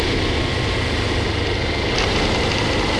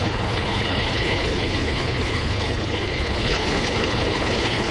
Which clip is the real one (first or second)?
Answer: first